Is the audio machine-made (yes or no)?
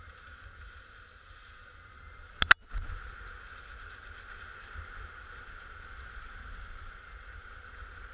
no